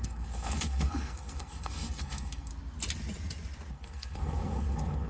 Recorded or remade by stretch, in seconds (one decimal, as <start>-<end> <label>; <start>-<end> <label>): 0.0-2.5 remade; 2.5-3.7 recorded; 3.7-5.1 remade